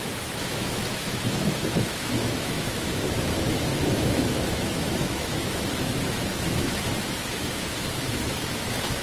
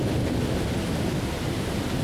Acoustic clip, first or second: second